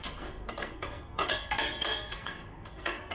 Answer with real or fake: fake